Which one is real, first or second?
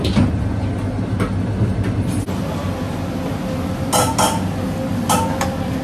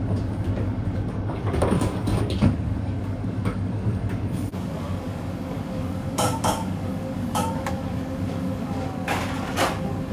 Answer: first